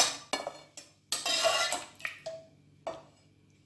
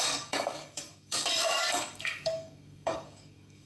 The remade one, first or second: second